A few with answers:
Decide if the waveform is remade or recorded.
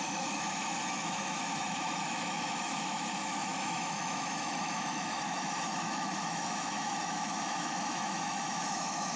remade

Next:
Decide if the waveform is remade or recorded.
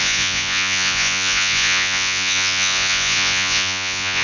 remade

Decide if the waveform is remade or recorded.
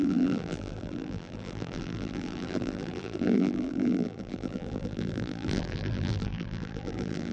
remade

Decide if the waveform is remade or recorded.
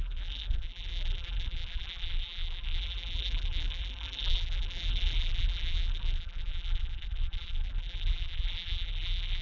remade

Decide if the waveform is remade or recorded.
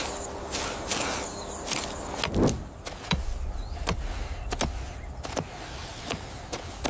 recorded